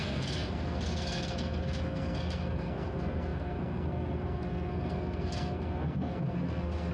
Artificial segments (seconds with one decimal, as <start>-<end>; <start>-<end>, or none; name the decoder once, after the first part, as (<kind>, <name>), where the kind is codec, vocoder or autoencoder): 0.0-6.9 (codec, SNAC)